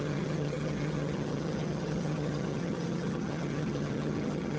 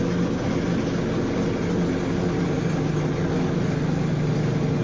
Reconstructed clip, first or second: first